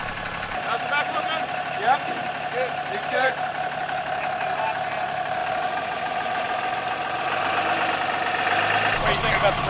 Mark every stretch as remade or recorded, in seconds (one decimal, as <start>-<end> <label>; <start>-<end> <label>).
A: 0.0-9.7 recorded